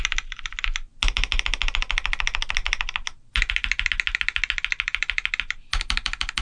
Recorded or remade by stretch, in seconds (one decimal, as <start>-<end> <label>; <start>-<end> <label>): 0.0-6.4 recorded

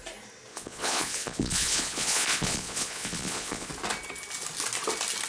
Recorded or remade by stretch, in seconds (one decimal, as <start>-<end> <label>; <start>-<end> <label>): 0.0-0.5 recorded; 0.5-3.7 remade; 3.7-5.3 recorded

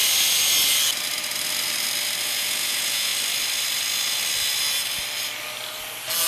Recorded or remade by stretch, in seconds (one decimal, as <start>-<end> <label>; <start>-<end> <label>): 0.0-2.2 recorded; 2.2-3.1 remade; 3.1-6.3 recorded

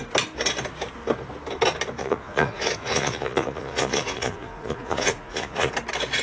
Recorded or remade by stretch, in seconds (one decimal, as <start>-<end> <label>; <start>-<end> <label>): 0.0-2.0 recorded; 2.0-5.7 remade; 5.7-6.2 recorded

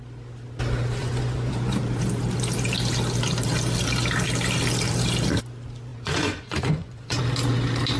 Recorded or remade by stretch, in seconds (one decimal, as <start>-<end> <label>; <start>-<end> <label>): 0.0-1.0 recorded; 1.0-1.8 remade; 1.8-5.9 recorded; 5.9-7.2 remade; 7.2-8.0 recorded

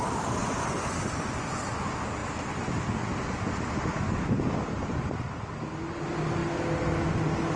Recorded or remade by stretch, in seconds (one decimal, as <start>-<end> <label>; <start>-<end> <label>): 0.0-0.4 recorded; 0.4-1.7 remade; 1.7-7.6 recorded

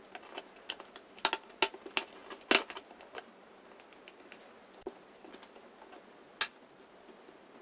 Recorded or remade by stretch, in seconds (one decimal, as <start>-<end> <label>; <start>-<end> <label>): 0.0-7.6 recorded

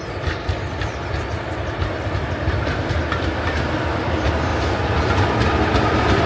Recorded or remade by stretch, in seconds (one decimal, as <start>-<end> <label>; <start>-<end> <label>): 0.0-6.3 recorded